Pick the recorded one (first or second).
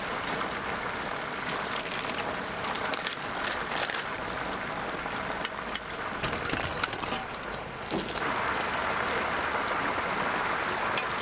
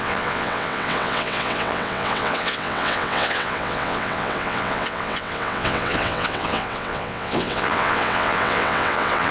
first